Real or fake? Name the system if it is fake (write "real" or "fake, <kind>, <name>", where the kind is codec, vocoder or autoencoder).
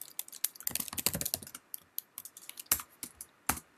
real